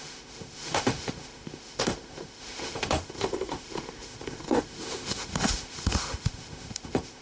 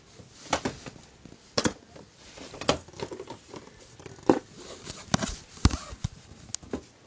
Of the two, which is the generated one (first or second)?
first